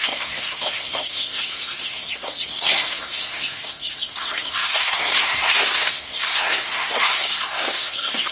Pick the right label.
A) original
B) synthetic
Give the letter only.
B